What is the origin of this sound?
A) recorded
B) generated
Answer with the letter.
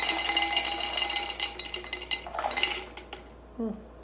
A